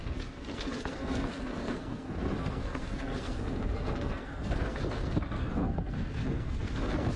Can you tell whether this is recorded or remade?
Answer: remade